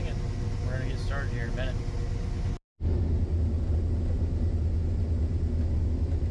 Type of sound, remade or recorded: recorded